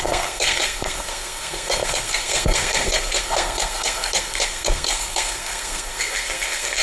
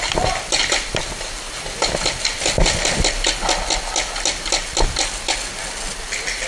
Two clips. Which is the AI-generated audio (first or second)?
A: first